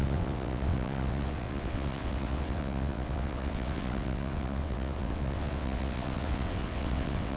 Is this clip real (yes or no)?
no